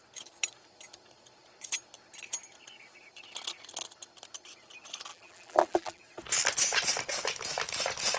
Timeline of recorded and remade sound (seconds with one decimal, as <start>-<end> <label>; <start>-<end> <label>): 0.0-5.1 recorded; 5.1-6.0 remade; 6.0-8.2 recorded

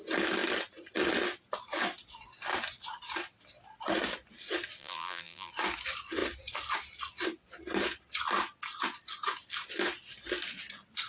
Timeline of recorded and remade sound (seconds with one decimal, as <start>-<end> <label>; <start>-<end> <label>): 0.0-4.8 recorded; 4.8-5.5 remade; 5.5-11.1 recorded

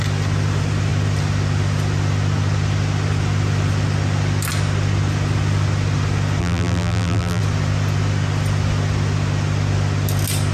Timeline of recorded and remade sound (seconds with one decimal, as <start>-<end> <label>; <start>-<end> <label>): 0.0-6.4 recorded; 6.4-7.4 remade; 7.4-10.5 recorded

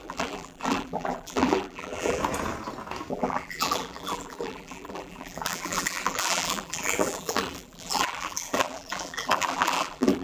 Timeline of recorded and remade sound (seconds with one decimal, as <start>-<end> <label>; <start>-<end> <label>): 0.0-2.2 remade; 2.2-3.1 recorded; 3.1-10.2 remade